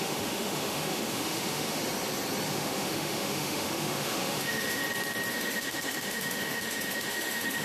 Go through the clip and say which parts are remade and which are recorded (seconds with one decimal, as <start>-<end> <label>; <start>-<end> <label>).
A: 0.0-1.8 remade; 1.8-2.5 recorded; 2.5-4.8 remade; 4.8-5.3 recorded; 5.3-7.6 remade